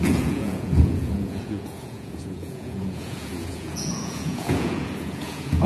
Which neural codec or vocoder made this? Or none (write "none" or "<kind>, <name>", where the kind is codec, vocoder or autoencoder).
vocoder, Vocos